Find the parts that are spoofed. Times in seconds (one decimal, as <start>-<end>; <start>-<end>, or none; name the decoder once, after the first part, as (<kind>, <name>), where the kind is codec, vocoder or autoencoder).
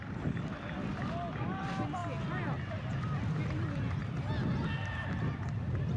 none